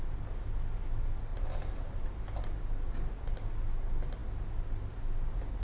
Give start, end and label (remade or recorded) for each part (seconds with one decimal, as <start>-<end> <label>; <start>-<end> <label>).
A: 0.0-1.3 recorded; 1.3-2.1 remade; 2.1-5.6 recorded